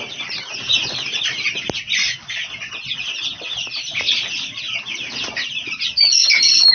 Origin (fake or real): real